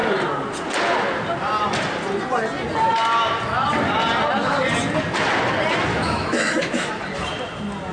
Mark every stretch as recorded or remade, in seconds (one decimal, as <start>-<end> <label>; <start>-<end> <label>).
0.0-5.9 recorded; 5.9-6.9 remade; 6.9-7.9 recorded